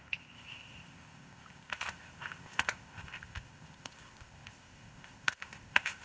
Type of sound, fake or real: fake